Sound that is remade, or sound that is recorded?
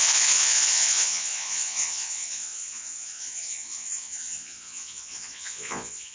remade